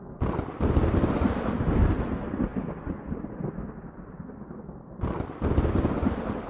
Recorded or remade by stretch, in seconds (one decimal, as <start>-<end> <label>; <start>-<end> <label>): 0.0-6.5 recorded